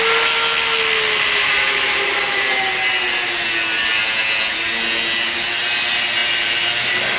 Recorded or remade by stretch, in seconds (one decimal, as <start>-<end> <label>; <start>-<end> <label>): 0.0-7.2 recorded